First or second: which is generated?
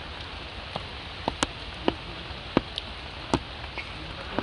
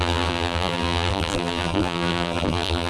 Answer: second